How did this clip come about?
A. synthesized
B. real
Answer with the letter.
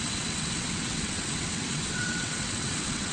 A